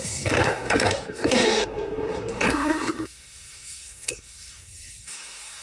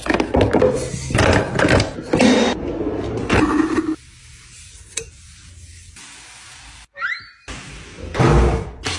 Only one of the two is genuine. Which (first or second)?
second